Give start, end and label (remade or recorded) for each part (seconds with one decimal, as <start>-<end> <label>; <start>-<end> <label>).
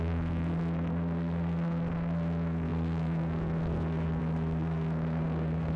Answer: 0.0-5.8 remade